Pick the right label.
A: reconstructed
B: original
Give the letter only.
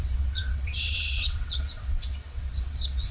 A